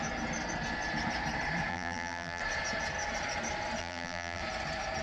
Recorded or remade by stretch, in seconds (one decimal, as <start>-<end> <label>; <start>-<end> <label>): 0.0-1.7 recorded; 1.7-2.4 remade; 2.4-3.8 recorded; 3.8-4.4 remade; 4.4-5.0 recorded